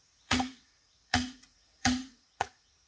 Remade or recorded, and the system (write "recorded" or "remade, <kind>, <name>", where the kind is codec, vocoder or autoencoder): remade, vocoder, Vocos